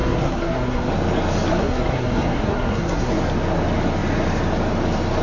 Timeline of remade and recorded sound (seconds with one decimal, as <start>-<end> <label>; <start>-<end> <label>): 0.0-0.9 remade; 0.9-1.5 recorded; 1.5-3.1 remade; 3.1-5.2 recorded